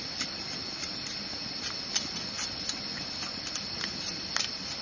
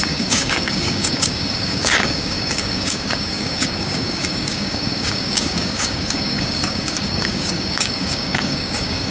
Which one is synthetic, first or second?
second